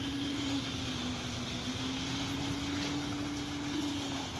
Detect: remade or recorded recorded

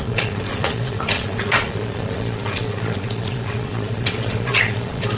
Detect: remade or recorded remade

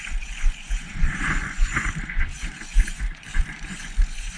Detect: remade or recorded remade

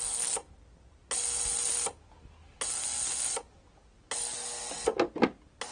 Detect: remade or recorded recorded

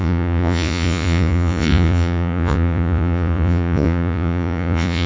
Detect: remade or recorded remade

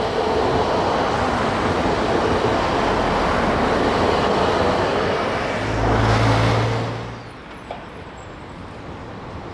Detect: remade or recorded recorded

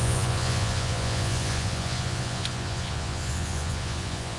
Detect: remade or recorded remade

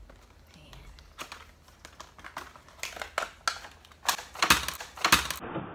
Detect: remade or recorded recorded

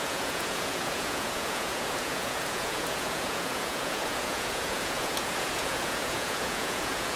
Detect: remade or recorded remade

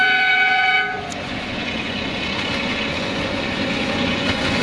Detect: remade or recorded remade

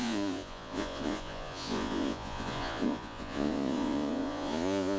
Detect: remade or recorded remade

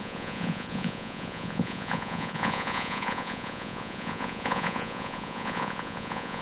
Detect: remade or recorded remade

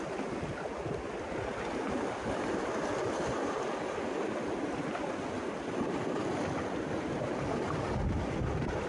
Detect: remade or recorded recorded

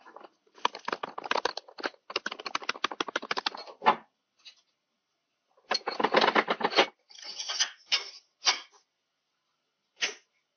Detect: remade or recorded recorded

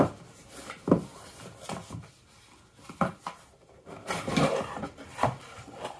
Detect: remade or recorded recorded